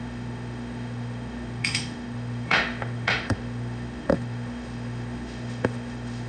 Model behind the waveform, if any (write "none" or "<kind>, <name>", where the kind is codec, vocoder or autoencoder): autoencoder, DAC-VAE